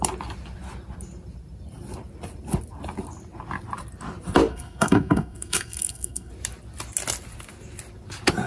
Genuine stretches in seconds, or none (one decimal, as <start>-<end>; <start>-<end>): 0.0-4.5; 6.3-8.5